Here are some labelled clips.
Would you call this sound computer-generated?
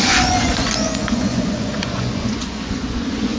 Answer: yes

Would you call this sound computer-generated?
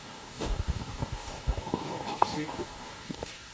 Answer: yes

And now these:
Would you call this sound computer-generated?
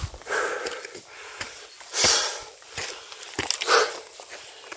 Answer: no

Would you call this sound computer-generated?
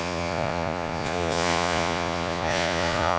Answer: yes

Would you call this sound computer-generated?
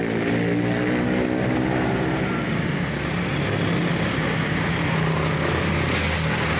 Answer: no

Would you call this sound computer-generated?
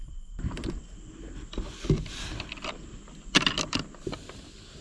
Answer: no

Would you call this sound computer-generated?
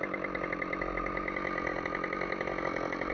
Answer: no